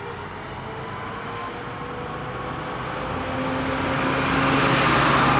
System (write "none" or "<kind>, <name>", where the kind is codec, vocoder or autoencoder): none